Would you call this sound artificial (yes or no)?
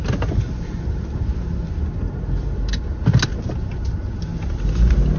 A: no